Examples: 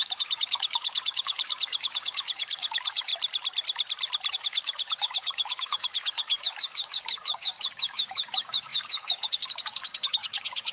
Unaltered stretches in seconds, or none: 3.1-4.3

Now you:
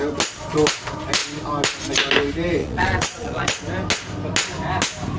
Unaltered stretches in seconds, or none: 0.0-2.6; 3.6-5.2